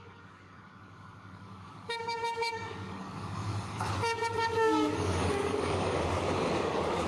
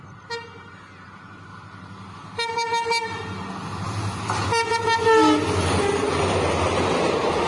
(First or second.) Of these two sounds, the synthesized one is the first